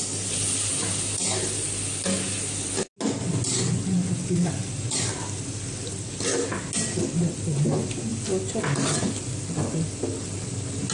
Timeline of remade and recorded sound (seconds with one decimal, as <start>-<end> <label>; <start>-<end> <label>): 0.0-10.9 recorded